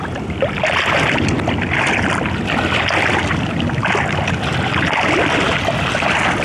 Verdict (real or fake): real